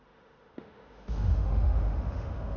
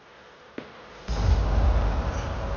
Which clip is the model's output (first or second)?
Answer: first